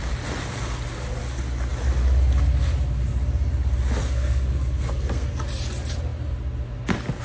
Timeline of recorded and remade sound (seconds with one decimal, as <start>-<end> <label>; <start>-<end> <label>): 0.0-4.0 recorded; 4.0-5.3 remade; 5.3-7.2 recorded